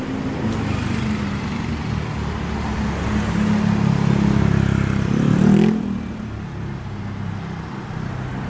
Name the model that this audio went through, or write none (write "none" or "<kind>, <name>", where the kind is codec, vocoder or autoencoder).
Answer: none